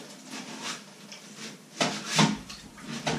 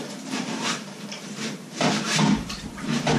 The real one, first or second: first